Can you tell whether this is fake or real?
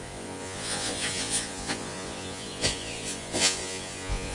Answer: fake